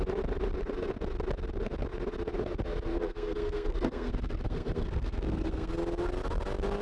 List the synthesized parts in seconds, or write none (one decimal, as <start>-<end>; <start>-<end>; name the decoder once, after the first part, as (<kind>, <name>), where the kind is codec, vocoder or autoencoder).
2.9-5.7 (codec, SNAC)